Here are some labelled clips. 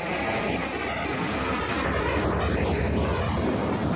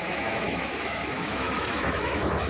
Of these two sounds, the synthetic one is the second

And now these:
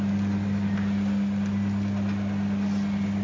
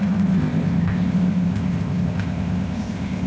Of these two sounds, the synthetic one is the second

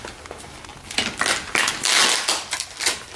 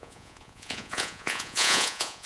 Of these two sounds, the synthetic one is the second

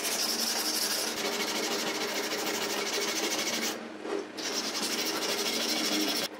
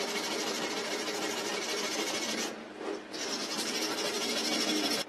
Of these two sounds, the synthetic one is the second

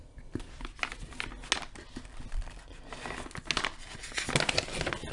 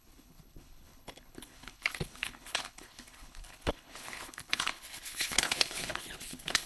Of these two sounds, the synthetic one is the second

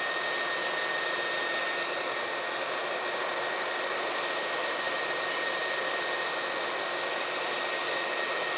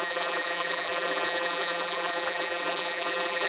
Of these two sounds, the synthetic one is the second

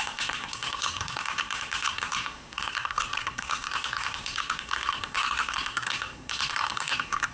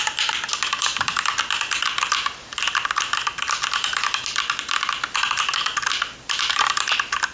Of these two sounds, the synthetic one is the first